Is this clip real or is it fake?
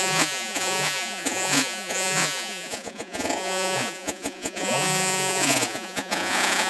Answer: fake